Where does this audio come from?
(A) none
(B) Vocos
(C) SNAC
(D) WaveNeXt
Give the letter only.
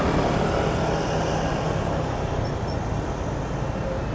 A